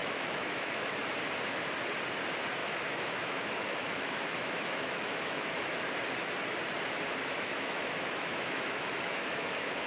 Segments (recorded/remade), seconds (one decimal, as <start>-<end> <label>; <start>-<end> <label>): 0.0-0.9 remade; 0.9-2.6 recorded; 2.6-5.8 remade; 5.8-7.5 recorded; 7.5-9.9 remade